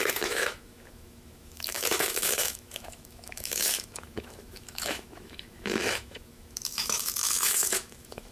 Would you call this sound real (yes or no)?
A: no